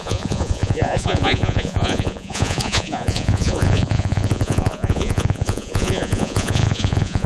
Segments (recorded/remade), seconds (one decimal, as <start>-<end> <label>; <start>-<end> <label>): 0.0-7.3 remade